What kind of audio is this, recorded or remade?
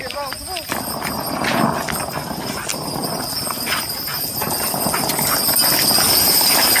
recorded